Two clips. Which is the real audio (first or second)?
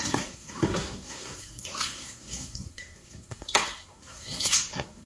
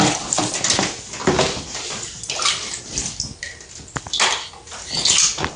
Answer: second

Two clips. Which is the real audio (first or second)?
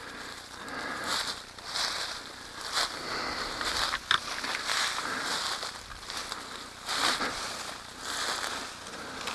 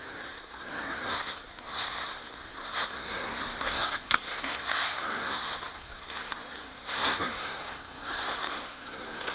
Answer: first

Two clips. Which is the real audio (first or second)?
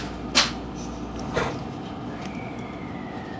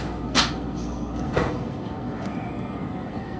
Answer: first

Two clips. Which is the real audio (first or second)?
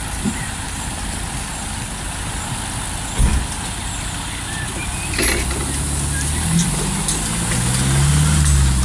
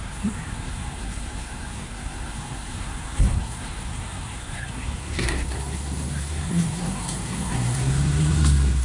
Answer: first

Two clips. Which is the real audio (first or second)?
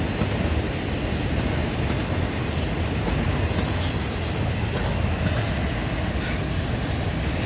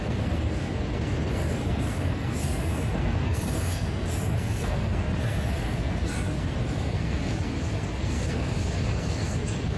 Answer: first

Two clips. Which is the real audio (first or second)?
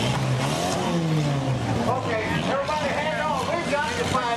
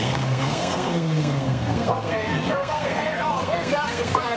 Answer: first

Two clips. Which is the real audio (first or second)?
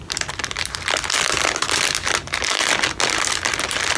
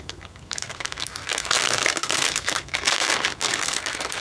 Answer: first